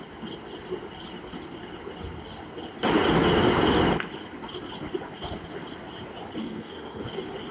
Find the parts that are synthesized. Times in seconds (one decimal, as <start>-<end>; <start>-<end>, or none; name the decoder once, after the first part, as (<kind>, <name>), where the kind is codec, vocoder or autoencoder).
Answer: 6.4-7.0 (codec, SNAC)